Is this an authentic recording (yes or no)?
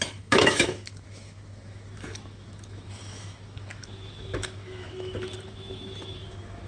no